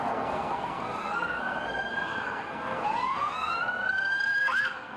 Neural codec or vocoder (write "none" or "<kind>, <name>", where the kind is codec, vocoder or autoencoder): codec, SNAC